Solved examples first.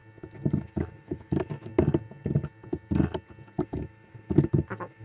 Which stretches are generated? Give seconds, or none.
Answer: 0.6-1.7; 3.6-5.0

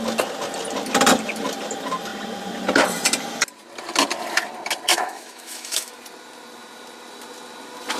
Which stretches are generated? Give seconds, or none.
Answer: 4.9-5.9